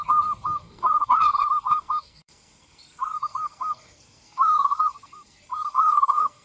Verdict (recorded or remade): remade